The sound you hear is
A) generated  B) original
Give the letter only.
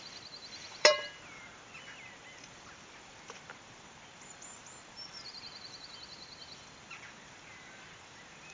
A